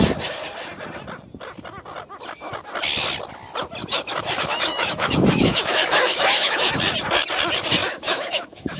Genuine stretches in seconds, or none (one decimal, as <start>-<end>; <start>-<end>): 0.0-3.8; 6.7-7.8